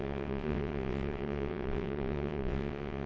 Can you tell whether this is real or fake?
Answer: fake